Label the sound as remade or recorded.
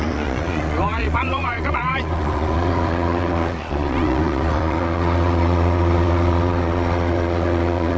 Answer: remade